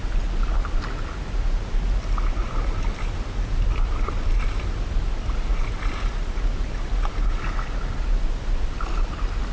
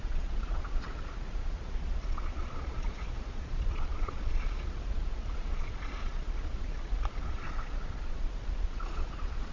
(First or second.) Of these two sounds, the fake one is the second